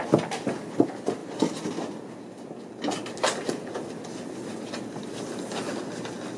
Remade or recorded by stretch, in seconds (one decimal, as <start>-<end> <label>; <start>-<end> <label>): 0.0-6.4 recorded